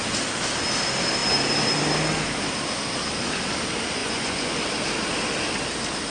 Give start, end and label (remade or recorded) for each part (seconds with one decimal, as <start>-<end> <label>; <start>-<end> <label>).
0.0-4.0 recorded; 4.0-4.5 remade; 4.5-6.1 recorded